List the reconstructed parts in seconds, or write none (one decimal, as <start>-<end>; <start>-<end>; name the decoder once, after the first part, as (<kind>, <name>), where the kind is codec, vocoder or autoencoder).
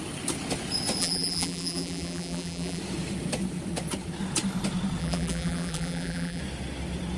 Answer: 1.0-2.8 (vocoder, BigVGAN v2); 5.0-6.4